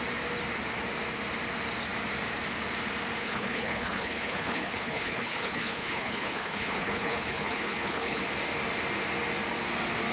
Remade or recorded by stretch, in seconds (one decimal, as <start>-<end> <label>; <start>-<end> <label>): 0.0-3.2 recorded; 3.2-8.2 remade; 8.2-10.1 recorded